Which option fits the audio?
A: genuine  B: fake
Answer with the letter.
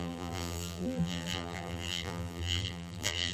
B